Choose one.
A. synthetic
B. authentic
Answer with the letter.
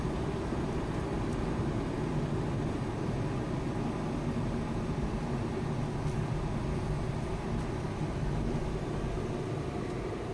B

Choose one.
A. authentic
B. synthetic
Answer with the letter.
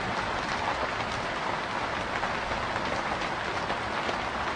A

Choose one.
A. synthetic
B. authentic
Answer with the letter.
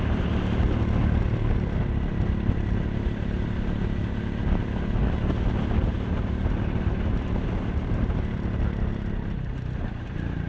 B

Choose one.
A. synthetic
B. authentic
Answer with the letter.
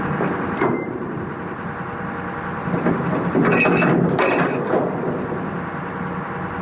B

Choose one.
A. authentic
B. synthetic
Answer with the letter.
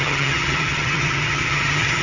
B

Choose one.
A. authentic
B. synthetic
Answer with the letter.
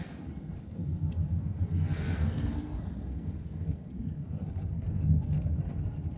B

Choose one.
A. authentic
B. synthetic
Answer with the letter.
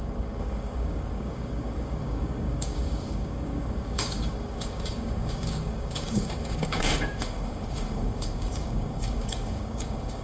B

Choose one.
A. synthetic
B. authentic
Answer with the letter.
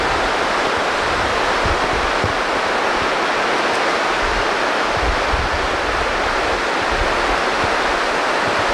B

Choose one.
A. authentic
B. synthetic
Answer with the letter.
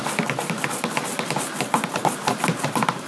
A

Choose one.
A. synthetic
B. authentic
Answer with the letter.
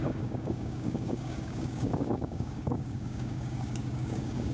A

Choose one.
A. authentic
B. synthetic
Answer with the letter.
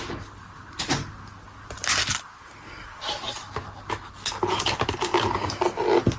A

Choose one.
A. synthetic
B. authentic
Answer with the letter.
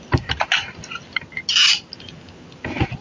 B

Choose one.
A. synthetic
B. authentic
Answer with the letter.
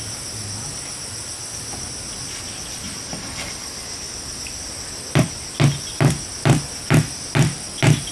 B